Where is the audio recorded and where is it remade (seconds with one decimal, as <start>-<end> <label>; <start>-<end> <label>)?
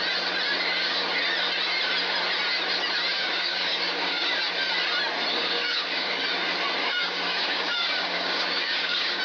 0.0-3.1 recorded; 3.1-4.4 remade; 4.4-5.3 recorded; 5.3-6.2 remade; 6.2-6.8 recorded; 6.8-9.2 remade